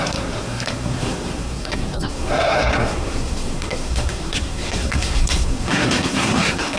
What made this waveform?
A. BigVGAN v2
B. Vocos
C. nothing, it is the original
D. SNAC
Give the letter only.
D